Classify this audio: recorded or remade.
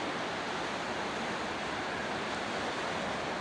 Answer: recorded